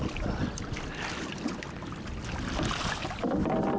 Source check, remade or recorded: recorded